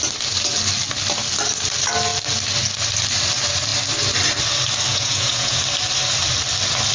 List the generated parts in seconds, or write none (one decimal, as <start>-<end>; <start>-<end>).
4.9-5.6